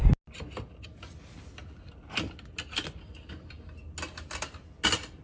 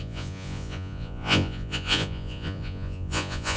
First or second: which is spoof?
second